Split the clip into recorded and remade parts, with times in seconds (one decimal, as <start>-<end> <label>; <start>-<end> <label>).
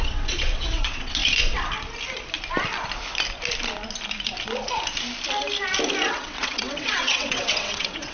0.0-1.2 remade; 1.2-6.1 recorded; 6.1-8.1 remade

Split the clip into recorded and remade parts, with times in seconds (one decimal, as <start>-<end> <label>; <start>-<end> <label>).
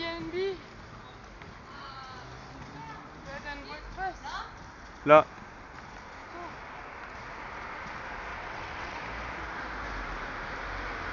0.0-8.3 recorded; 8.3-9.0 remade; 9.0-11.1 recorded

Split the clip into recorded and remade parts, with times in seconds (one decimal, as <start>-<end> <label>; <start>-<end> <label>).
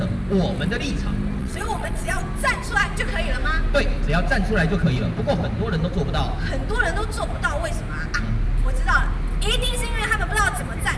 0.0-1.4 recorded; 1.4-2.2 remade; 2.2-11.0 recorded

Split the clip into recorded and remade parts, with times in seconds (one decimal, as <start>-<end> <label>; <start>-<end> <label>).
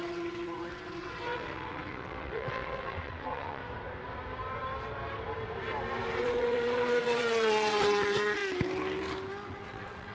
0.0-3.6 remade; 3.6-6.2 recorded; 6.2-8.4 remade; 8.4-9.5 recorded; 9.5-10.1 remade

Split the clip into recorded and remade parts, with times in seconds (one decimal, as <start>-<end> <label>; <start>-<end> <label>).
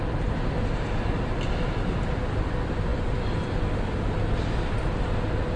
0.0-5.6 recorded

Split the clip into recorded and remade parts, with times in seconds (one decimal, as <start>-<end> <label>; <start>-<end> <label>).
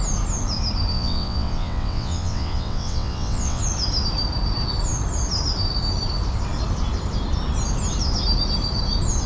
0.0-0.9 recorded; 0.9-3.6 remade; 3.6-9.3 recorded